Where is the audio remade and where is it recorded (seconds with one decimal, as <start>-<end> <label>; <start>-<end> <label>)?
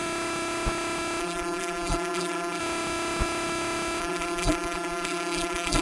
0.0-1.2 recorded; 1.2-2.6 remade; 2.6-4.0 recorded; 4.0-5.8 remade